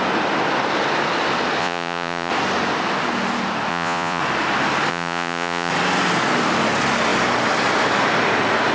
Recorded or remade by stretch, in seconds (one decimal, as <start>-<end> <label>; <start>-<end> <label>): 0.0-1.6 recorded; 1.6-2.3 remade; 2.3-3.7 recorded; 3.7-4.2 remade; 4.2-4.9 recorded; 4.9-5.7 remade; 5.7-8.7 recorded

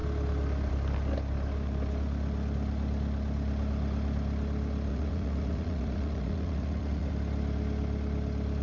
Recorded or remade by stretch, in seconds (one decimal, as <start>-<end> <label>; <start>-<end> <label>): 0.0-4.9 recorded; 4.9-7.1 remade; 7.1-8.6 recorded

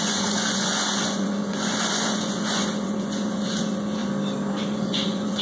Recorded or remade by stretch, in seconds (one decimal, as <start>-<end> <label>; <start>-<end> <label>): 0.0-4.0 remade; 4.0-4.6 recorded; 4.6-5.4 remade

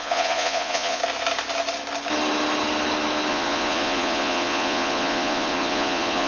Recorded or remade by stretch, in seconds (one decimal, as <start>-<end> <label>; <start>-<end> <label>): 0.0-1.0 remade; 1.0-3.3 recorded; 3.3-6.3 remade